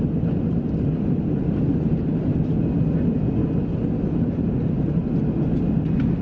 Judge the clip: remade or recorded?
recorded